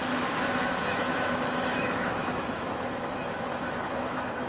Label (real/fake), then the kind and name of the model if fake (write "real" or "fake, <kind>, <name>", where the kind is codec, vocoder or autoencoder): fake, autoencoder, DAC-VAE